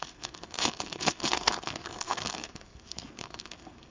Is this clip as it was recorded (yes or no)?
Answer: no